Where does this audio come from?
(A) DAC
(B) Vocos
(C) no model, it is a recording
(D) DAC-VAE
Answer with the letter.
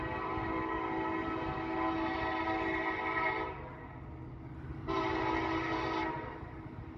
C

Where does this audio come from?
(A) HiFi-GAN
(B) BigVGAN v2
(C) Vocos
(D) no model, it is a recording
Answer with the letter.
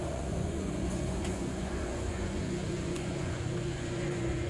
C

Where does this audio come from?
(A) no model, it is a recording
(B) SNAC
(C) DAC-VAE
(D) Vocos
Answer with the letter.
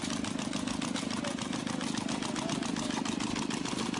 A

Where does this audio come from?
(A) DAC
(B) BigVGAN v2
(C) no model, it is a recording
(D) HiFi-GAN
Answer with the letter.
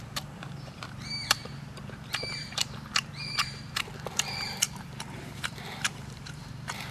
B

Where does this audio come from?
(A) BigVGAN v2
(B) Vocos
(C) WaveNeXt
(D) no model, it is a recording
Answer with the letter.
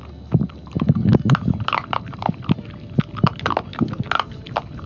D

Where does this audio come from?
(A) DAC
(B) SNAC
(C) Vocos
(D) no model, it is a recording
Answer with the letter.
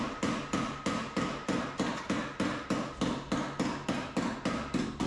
D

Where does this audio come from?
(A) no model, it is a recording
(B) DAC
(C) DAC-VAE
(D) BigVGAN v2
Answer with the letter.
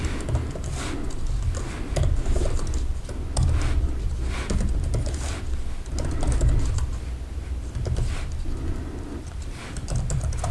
D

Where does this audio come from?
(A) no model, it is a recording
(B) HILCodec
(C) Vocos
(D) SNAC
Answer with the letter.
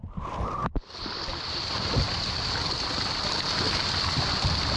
A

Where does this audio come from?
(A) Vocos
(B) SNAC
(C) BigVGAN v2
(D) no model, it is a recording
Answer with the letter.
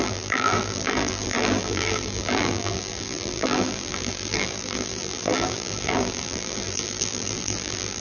C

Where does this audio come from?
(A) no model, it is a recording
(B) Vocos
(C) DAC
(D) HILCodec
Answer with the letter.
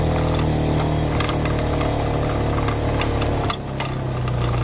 A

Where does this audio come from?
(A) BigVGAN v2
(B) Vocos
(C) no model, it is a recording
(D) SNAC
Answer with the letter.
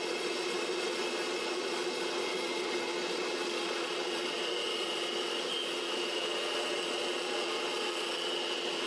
B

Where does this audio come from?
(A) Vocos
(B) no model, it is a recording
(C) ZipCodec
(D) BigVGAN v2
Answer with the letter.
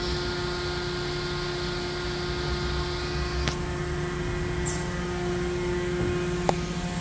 B